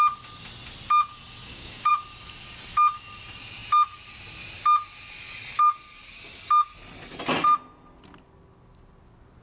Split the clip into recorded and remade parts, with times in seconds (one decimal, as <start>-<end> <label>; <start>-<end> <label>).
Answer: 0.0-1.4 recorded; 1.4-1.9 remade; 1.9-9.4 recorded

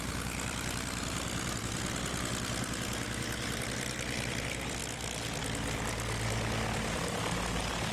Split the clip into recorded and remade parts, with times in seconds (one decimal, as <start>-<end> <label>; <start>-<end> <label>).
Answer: 0.0-7.9 recorded

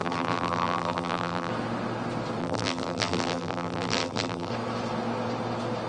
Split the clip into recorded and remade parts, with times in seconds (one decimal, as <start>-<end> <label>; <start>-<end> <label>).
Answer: 0.0-1.5 remade; 1.5-2.4 recorded; 2.4-4.5 remade; 4.5-5.9 recorded